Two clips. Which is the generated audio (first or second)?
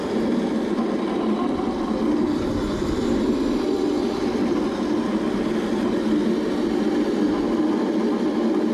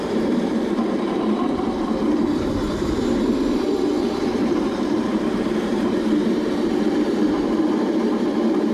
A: second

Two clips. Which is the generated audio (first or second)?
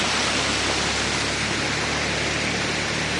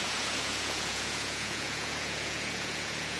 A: second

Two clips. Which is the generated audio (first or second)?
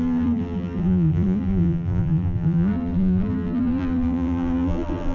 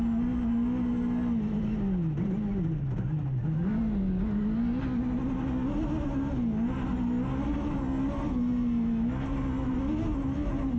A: first